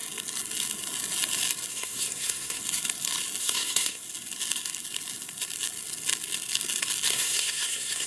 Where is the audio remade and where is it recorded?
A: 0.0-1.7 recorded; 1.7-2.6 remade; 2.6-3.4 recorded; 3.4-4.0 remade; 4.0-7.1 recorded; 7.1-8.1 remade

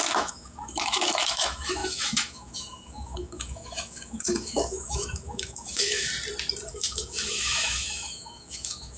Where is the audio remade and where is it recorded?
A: 0.0-6.1 remade; 6.1-6.7 recorded; 6.7-9.0 remade